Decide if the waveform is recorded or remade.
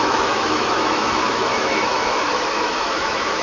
remade